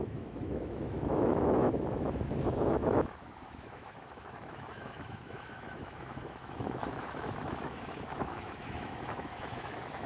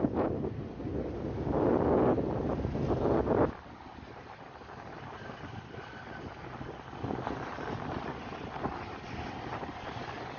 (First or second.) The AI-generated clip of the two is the first